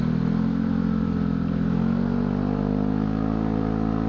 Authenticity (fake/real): real